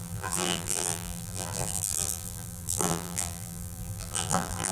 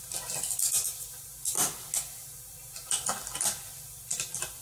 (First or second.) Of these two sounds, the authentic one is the second